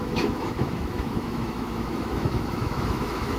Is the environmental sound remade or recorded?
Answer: remade